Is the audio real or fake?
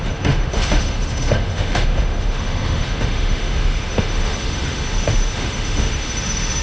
fake